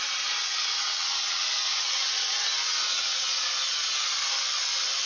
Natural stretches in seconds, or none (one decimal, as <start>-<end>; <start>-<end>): 0.0-0.4; 3.5-5.1